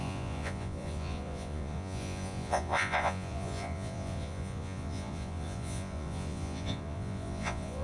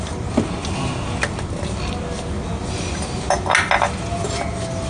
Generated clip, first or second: first